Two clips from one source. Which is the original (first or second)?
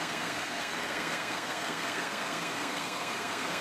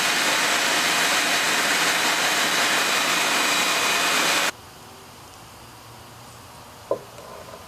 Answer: second